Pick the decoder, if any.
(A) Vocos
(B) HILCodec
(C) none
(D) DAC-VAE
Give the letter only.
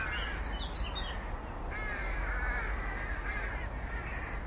C